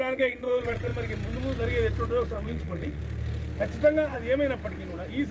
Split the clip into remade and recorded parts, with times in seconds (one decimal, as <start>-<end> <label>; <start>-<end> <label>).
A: 0.0-0.9 remade; 0.9-2.4 recorded; 2.4-3.0 remade; 3.0-5.3 recorded